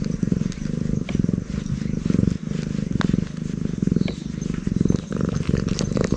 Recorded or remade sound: recorded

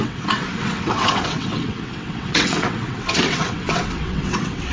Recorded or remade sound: remade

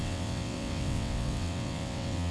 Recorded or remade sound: remade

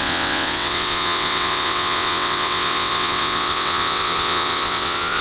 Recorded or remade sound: remade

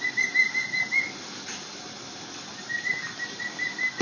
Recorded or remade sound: recorded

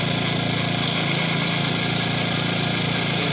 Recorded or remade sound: recorded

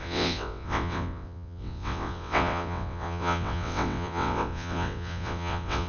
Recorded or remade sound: remade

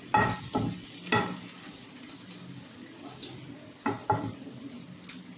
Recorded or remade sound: recorded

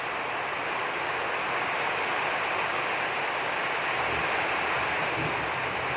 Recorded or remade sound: recorded